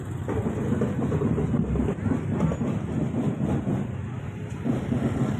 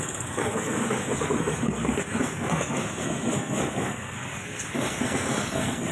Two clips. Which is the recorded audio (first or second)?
first